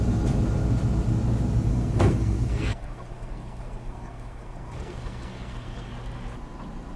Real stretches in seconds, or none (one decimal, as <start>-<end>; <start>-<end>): 0.0-1.7; 5.9-7.0